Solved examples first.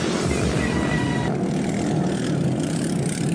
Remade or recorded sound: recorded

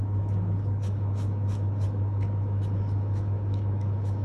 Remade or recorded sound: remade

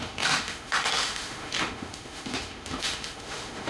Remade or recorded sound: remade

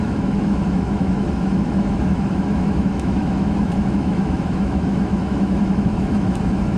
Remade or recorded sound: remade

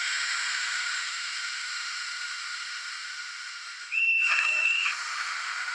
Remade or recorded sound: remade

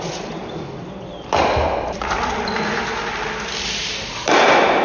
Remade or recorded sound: recorded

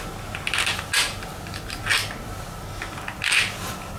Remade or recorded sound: recorded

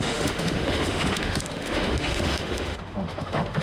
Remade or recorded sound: remade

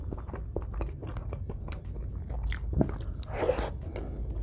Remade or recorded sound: recorded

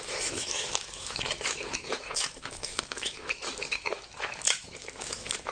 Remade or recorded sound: remade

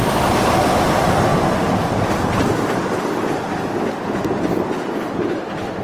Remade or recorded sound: recorded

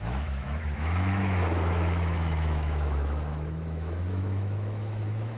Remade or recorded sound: remade